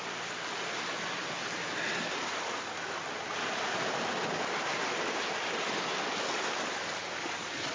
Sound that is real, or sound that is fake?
real